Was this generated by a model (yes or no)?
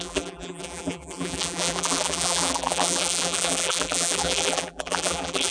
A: yes